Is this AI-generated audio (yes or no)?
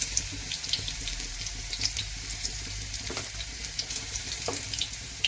yes